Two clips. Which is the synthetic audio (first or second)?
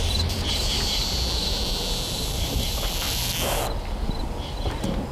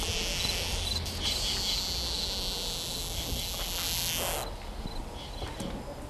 first